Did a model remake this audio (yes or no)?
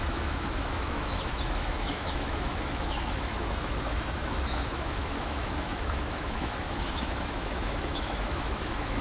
yes